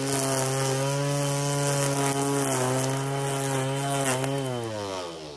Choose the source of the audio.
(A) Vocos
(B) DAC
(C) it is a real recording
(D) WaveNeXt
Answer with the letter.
C